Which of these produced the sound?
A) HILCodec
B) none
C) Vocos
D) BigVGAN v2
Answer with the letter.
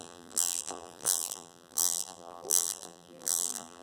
D